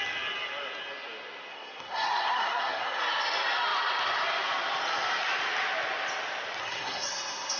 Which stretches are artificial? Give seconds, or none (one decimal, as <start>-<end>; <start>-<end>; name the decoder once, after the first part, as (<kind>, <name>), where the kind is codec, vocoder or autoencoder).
1.5-3.0 (codec, SNAC); 6.6-7.6